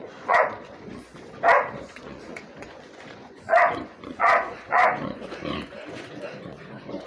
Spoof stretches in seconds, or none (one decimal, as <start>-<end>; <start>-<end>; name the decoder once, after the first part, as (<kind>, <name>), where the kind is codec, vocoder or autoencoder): 0.0-1.1 (vocoder, Vocos); 1.7-7.1